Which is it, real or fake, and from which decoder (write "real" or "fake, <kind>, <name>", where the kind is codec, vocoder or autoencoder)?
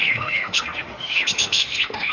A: fake, autoencoder, DAC-VAE